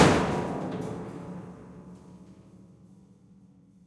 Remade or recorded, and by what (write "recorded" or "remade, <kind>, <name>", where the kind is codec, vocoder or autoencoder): recorded